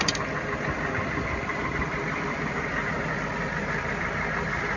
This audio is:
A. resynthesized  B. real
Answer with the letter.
B